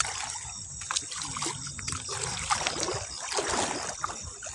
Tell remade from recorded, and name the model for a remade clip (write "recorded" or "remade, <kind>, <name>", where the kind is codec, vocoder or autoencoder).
recorded